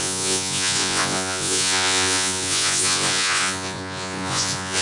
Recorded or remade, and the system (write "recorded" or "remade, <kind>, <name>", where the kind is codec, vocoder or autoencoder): remade, vocoder, Vocos